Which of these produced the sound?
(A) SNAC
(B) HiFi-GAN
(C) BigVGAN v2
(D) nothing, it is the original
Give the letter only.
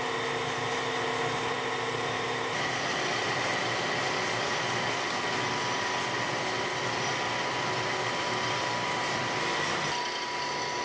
D